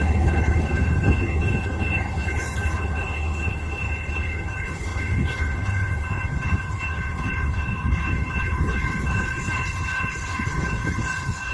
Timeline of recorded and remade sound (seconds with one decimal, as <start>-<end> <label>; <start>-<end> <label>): 0.0-11.5 remade